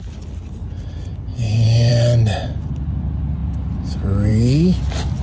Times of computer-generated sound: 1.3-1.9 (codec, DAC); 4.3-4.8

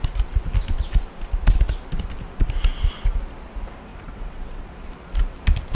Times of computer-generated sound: 3.9-4.7 (vocoder, WaveNeXt)